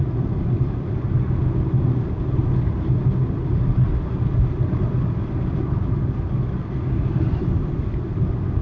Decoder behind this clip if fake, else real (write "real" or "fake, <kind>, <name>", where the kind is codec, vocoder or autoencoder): real